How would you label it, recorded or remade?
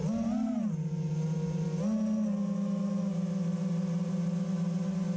recorded